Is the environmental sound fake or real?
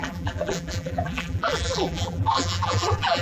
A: fake